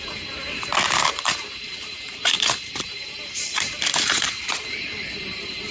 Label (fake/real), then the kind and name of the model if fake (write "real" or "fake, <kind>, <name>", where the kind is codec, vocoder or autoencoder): fake, vocoder, BigVGAN v2